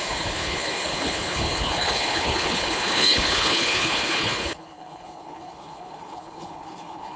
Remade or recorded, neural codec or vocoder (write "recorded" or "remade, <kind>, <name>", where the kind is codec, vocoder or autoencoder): remade, codec, HILCodec